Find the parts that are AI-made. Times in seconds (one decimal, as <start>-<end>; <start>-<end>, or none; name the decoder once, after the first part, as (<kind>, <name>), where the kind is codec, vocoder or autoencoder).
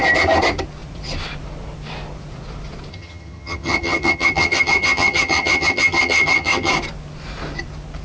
2.9-6.7 (vocoder, HiFi-GAN)